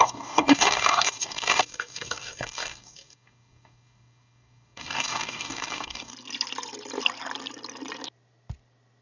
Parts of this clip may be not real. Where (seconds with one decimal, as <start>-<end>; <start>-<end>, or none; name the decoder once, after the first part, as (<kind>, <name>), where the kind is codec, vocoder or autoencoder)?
0.0-6.1 (codec, DAC)